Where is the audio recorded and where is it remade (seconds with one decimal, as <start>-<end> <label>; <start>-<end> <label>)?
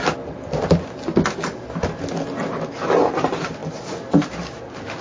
0.0-5.0 recorded